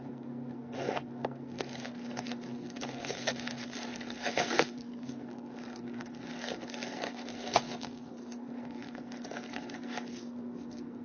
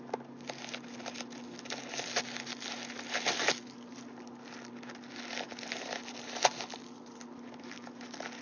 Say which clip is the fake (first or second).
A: first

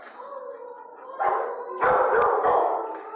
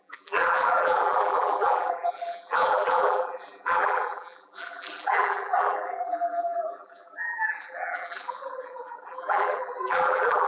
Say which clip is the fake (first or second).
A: second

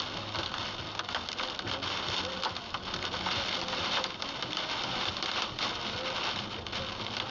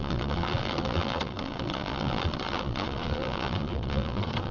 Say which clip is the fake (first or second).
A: second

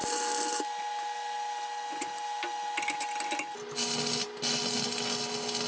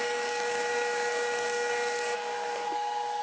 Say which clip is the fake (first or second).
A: second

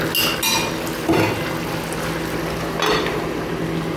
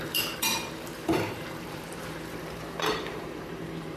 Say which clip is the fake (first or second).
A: second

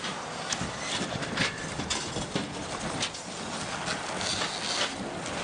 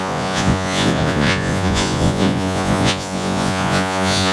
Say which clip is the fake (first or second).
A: second